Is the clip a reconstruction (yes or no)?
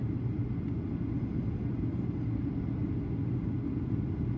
no